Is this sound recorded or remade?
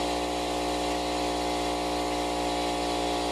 remade